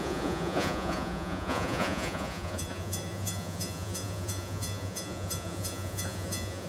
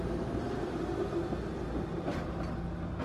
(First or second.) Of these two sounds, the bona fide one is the second